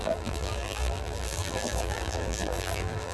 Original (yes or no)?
no